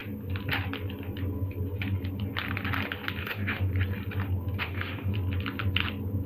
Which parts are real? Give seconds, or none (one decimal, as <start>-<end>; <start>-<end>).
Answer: 0.0-3.2; 3.7-4.6; 5.1-6.3